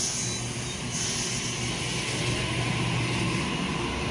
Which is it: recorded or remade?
recorded